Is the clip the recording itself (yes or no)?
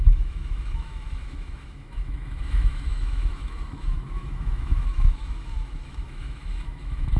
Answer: no